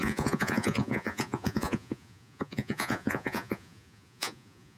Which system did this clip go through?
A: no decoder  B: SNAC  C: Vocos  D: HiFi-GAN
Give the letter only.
C